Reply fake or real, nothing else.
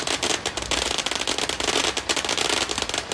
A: real